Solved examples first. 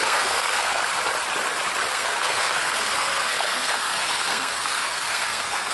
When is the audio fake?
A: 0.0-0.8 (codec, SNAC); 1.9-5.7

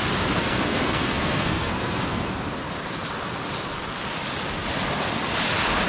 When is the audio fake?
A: 0.4-2.5 (codec, SNAC)

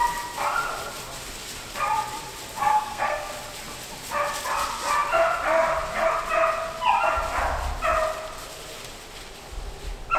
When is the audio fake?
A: 2.6-3.3 (codec, SNAC)

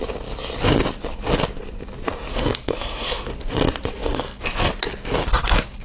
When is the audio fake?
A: 2.3-3.3 (codec, SNAC); 4.0-4.7

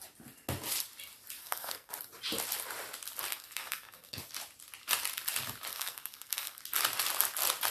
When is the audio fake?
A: 1.4-1.9 (codec, SNAC); 3.3-4.2; 5.7-6.6

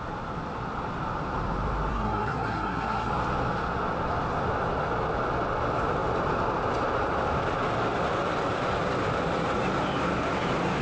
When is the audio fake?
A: 1.9-3.1 (codec, SNAC)